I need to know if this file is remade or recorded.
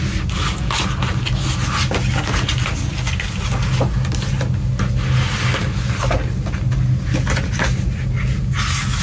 recorded